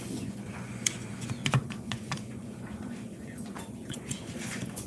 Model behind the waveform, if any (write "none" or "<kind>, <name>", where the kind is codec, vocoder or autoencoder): vocoder, Vocos